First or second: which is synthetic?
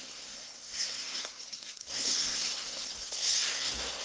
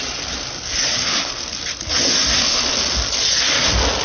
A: first